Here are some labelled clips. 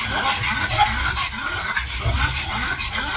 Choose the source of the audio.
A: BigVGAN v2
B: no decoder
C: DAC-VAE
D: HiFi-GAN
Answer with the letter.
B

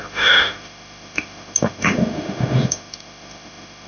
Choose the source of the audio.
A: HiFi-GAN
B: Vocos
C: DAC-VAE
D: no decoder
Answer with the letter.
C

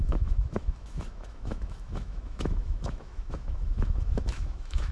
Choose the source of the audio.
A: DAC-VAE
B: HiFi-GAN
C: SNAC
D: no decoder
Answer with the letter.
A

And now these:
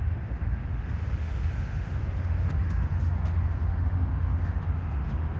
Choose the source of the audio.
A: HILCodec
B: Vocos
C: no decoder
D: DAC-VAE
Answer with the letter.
D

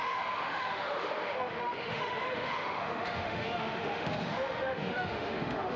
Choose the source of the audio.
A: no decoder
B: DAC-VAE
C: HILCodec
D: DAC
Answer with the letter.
B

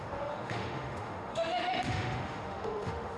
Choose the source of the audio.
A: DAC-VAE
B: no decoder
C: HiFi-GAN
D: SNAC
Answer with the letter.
A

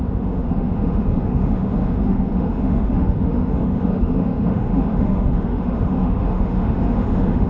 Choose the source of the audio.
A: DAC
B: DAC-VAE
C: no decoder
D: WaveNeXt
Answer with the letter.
B